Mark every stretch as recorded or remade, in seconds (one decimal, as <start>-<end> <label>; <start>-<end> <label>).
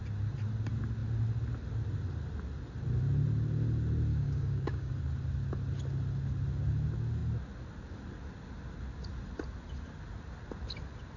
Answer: 0.0-4.1 recorded; 4.1-4.9 remade; 4.9-11.2 recorded